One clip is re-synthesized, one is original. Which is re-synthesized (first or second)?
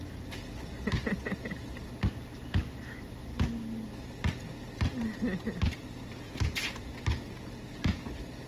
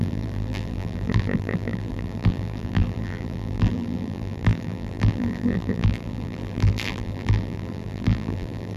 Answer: second